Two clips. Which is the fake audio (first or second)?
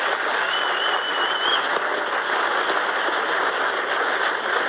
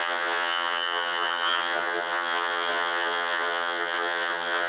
second